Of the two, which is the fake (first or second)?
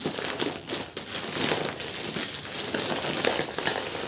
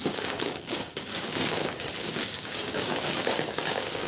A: second